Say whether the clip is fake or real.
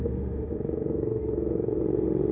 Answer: fake